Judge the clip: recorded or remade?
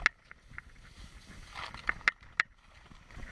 recorded